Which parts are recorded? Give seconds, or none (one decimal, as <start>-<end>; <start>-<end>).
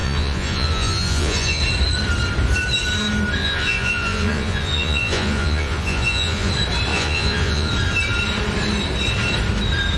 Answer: 1.6-3.4; 6.5-6.9; 7.7-10.0